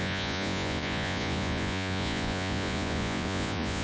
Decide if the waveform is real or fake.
fake